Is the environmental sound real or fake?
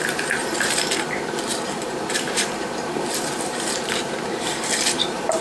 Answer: fake